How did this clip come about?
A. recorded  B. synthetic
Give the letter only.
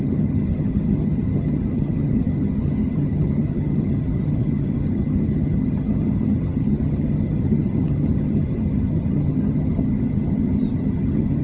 B